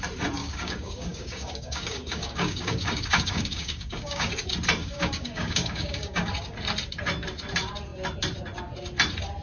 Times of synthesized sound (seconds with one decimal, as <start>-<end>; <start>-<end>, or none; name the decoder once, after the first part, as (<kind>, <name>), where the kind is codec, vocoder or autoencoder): 0.4-4.3 (codec, DAC); 4.8-6.3

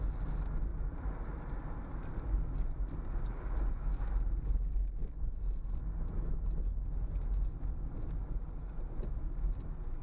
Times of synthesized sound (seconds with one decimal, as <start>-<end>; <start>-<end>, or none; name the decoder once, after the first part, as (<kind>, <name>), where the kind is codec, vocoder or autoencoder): none

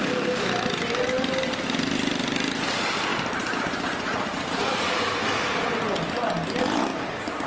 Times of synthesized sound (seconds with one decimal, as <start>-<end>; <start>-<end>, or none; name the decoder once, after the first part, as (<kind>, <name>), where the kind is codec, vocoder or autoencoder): 3.1-5.7 (vocoder, BigVGAN v2)